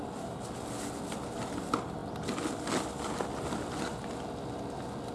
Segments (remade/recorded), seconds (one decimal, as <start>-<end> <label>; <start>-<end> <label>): 0.0-5.1 recorded